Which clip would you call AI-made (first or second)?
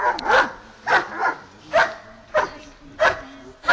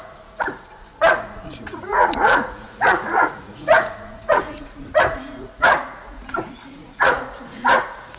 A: second